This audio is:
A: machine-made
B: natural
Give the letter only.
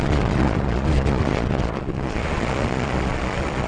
A